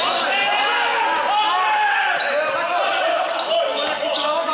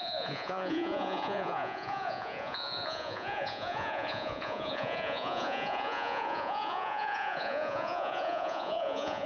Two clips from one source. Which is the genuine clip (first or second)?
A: first